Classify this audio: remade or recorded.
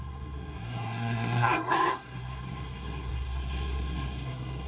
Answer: remade